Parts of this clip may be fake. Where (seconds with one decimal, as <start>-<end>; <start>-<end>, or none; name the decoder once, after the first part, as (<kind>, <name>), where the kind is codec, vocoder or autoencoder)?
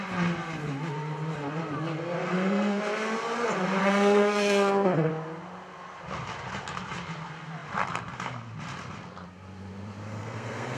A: 2.2-2.8 (codec, SNAC); 3.8-5.1; 10.1-10.8